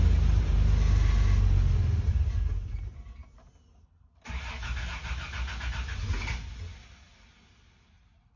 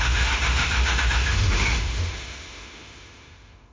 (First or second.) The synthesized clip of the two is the second